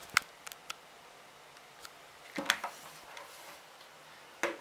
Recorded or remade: recorded